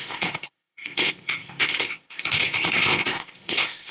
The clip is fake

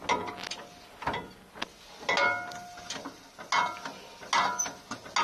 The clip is real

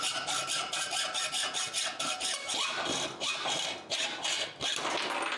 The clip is real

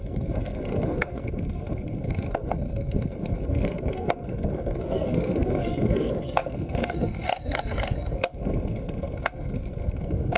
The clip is fake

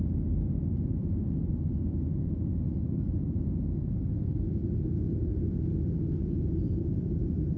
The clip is real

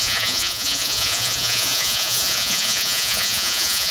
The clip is fake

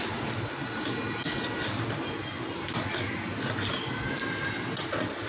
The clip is real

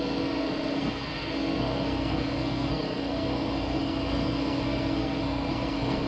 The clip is fake